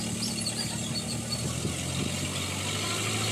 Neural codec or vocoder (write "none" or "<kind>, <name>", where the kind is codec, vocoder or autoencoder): none